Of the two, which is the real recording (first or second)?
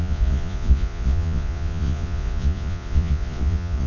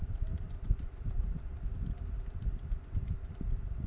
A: second